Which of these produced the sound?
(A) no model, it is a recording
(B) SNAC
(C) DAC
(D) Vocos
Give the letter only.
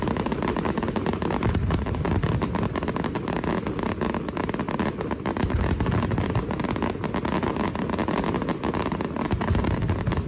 A